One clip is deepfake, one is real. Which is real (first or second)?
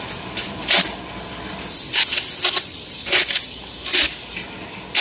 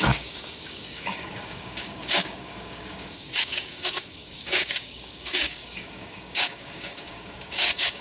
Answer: first